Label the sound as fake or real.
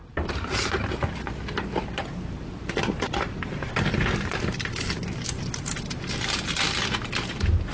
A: real